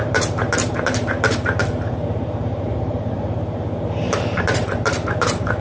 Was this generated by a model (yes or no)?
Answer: yes